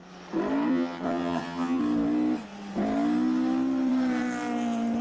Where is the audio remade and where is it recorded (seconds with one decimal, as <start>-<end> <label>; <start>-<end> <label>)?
0.0-0.7 recorded; 0.7-1.8 remade; 1.8-5.0 recorded